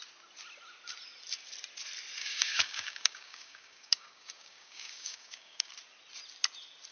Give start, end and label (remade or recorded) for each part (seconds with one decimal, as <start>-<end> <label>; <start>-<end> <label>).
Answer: 0.0-2.2 recorded; 2.2-5.7 remade; 5.7-6.9 recorded